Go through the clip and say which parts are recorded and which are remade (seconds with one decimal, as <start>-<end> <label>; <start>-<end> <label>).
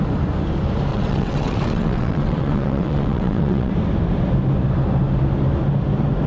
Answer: 0.0-0.9 recorded; 0.9-3.7 remade; 3.7-6.3 recorded